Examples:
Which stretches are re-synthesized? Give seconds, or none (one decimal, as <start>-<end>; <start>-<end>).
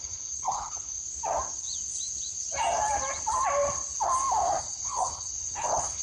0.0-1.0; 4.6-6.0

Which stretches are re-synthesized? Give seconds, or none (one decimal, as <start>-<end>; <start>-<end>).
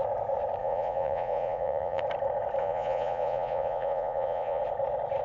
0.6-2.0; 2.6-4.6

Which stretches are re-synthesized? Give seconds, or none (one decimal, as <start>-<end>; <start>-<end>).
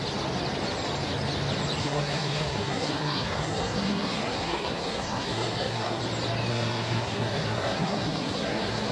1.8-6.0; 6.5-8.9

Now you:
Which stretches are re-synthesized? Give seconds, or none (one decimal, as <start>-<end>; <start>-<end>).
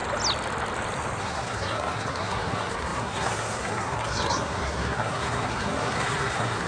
1.2-6.7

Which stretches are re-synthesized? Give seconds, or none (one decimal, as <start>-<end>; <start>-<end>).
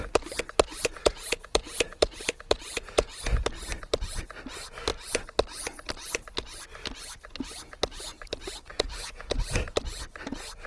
0.7-3.4; 8.7-9.4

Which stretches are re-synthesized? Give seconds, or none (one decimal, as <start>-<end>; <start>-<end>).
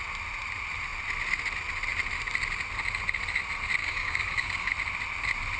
3.8-4.7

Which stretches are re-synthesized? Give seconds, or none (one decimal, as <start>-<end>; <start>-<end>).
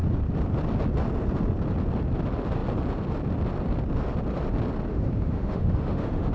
4.9-6.3